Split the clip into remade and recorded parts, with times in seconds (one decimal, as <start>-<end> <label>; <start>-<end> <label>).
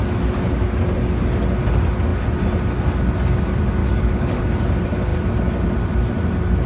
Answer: 0.0-3.8 recorded; 3.8-4.4 remade; 4.4-6.7 recorded